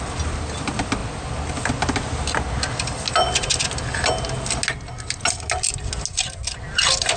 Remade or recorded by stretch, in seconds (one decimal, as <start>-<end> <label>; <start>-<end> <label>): 0.0-7.2 recorded